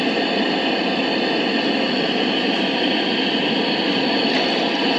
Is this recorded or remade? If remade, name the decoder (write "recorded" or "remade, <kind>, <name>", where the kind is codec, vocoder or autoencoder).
recorded